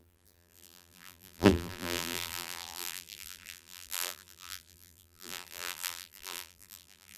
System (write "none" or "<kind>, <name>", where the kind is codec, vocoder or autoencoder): vocoder, BigVGAN v2